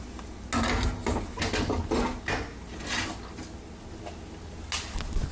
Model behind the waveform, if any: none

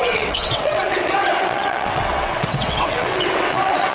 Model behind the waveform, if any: vocoder, WaveNeXt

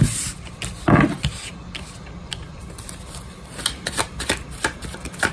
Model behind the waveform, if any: none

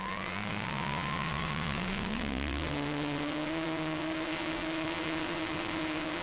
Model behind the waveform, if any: vocoder, WaveNeXt